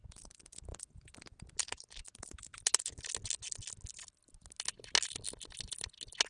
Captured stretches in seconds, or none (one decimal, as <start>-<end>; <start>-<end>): 0.0-6.3